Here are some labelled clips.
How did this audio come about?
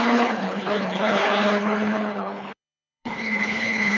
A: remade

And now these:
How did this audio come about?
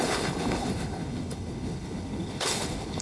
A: remade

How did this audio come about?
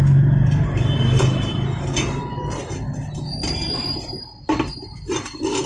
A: recorded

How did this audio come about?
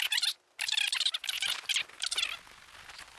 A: recorded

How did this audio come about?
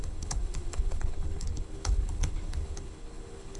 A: remade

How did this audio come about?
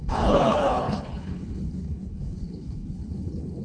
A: remade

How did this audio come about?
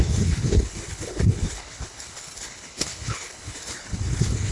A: remade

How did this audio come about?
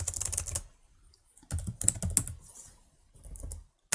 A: recorded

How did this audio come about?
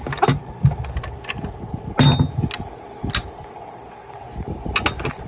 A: recorded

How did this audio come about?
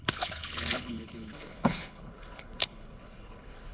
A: remade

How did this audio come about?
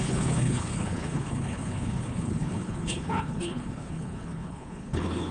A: remade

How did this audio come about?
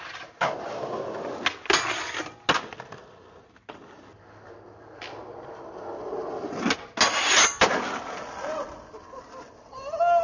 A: recorded